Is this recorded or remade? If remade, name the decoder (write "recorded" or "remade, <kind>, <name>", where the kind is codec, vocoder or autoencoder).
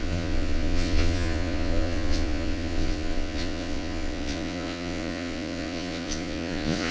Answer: remade, vocoder, Vocos